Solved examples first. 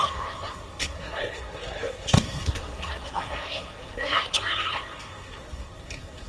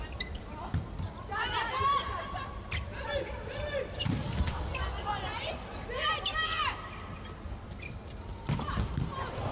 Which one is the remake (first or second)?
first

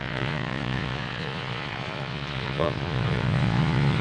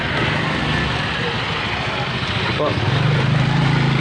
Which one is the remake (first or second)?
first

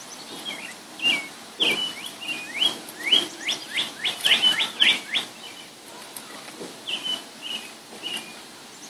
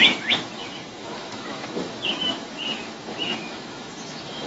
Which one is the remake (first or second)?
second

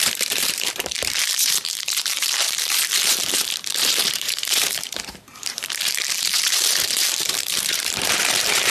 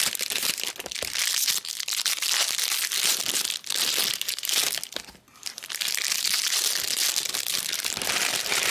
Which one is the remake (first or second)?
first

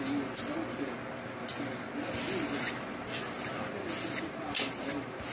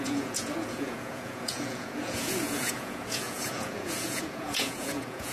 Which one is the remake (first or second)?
second